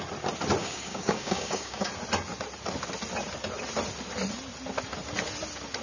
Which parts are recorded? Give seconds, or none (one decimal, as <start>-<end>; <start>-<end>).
0.0-0.6; 1.9-5.8